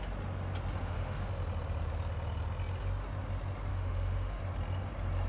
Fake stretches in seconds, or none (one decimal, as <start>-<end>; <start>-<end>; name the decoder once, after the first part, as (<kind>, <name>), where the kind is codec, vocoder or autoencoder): 0.8-1.3 (autoencoder, DAC-VAE); 3.7-4.4